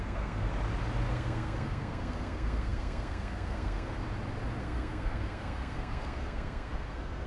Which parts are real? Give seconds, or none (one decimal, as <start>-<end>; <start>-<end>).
0.5-1.1; 4.0-4.6